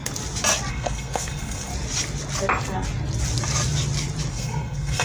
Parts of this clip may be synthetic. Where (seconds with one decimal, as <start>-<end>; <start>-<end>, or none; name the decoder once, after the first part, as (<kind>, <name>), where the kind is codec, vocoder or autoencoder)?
0.7-1.7 (codec, SNAC); 4.3-5.0